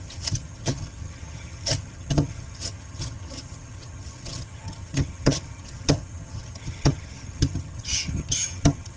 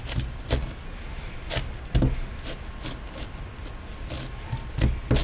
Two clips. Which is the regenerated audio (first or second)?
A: first